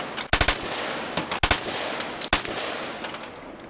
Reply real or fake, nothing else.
real